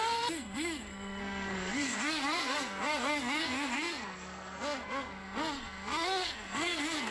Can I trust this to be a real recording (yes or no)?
no